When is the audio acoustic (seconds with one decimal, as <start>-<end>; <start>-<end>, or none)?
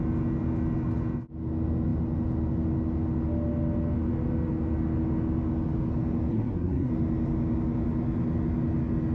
0.0-6.3; 6.9-9.1